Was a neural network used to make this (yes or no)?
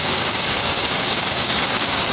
yes